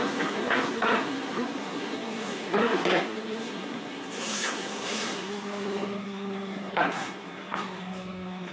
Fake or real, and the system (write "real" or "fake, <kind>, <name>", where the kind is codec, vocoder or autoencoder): fake, codec, SNAC